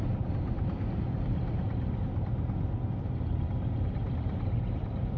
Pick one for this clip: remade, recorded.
recorded